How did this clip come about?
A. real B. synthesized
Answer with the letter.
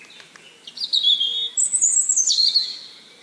A